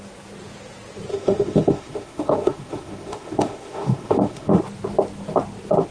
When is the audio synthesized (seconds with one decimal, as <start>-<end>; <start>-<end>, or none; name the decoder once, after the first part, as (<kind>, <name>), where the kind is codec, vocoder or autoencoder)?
1.1-4.6 (autoencoder, DAC-VAE)